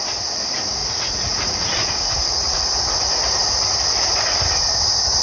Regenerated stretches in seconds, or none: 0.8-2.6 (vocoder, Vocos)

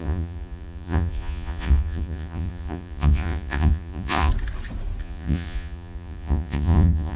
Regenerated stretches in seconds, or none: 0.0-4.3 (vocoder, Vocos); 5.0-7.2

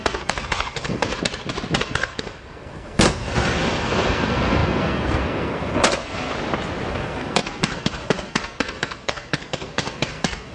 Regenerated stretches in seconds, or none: 0.0-1.1 (codec, SNAC); 1.8-6.3; 6.9-10.5

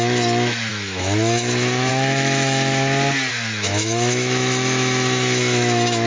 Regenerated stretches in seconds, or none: 0.0-2.7 (autoencoder, DAC-VAE); 3.3-6.1